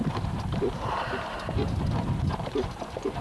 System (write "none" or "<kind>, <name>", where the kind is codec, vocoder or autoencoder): vocoder, BigVGAN v2